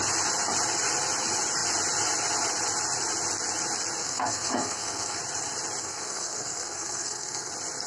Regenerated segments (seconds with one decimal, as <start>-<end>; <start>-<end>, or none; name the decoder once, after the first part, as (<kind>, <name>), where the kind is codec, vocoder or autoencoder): 4.0-5.2 (codec, SNAC); 5.8-7.5